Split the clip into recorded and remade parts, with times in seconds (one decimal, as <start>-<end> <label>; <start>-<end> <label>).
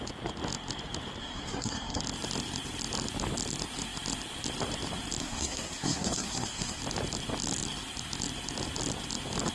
0.0-1.2 recorded; 1.2-2.0 remade; 2.0-5.2 recorded; 5.2-6.8 remade; 6.8-9.5 recorded